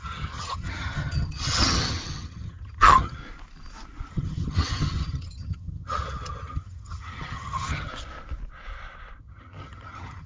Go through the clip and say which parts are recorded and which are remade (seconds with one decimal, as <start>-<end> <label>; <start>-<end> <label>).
0.0-3.2 remade; 3.2-4.1 recorded; 4.1-7.9 remade; 7.9-9.2 recorded; 9.2-10.3 remade